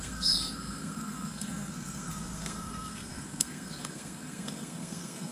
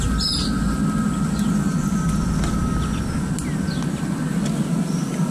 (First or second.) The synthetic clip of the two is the first